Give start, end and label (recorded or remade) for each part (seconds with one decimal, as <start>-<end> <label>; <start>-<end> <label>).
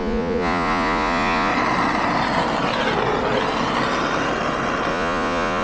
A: 0.0-1.5 remade; 1.5-4.9 recorded; 4.9-5.6 remade